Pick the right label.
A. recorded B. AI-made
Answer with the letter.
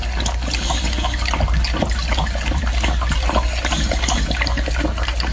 A